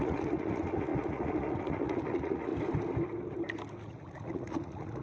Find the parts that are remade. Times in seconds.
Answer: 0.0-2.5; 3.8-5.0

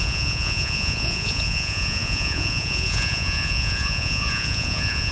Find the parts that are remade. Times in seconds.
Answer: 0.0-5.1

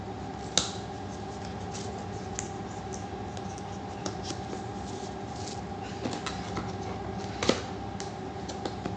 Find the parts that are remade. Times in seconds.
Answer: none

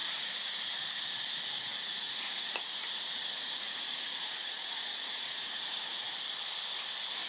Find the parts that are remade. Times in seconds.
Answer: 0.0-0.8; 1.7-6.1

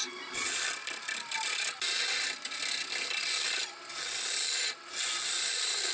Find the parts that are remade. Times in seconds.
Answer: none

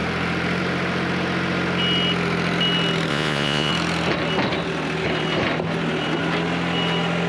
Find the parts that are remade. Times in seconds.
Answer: 3.1-3.7